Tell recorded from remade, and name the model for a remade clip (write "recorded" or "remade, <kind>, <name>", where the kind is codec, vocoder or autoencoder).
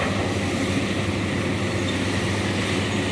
recorded